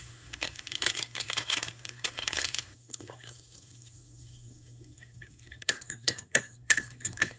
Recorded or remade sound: remade